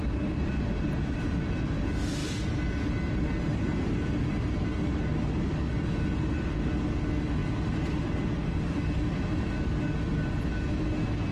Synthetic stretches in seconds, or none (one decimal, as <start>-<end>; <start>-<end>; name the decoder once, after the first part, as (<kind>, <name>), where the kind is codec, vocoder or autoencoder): none